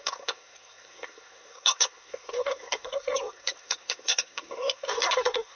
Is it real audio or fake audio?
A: fake